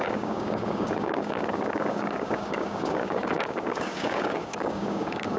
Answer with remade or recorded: remade